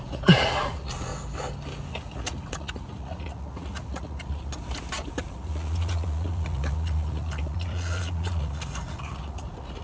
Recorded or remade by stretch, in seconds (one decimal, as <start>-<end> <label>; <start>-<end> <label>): 0.0-1.1 remade; 1.1-1.9 recorded; 1.9-4.5 remade; 4.5-5.1 recorded; 5.1-9.8 remade